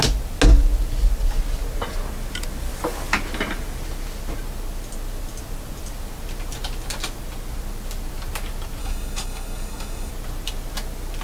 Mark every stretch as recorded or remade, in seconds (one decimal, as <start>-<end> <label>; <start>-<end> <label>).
0.0-8.8 recorded; 8.8-10.1 remade; 10.1-11.2 recorded